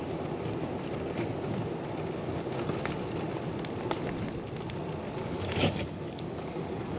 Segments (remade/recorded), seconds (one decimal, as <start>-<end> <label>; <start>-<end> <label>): 0.0-5.2 recorded; 5.2-7.0 remade

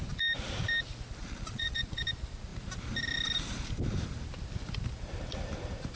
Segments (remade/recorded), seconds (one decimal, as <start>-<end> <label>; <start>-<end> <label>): 0.0-1.2 recorded; 1.2-2.0 remade; 2.0-6.0 recorded